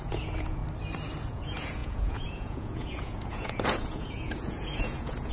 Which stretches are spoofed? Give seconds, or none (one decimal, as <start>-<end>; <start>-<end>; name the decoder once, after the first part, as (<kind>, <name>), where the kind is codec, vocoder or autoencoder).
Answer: 0.0-0.6 (vocoder, Vocos); 1.3-5.3